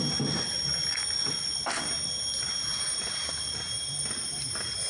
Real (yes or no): yes